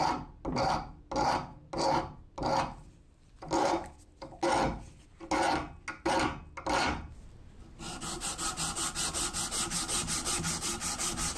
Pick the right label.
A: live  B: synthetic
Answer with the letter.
A